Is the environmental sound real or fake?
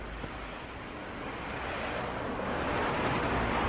real